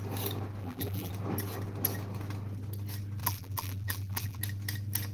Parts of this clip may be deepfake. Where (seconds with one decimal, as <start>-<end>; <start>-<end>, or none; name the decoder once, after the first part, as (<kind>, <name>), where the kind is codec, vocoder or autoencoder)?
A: 0.6-1.1 (vocoder, BigVGAN v2); 3.2-4.4